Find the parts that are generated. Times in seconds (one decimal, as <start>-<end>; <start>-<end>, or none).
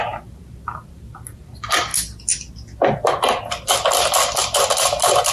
0.0-1.9; 4.4-5.3